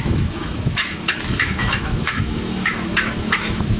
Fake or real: fake